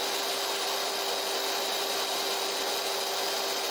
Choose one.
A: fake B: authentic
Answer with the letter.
B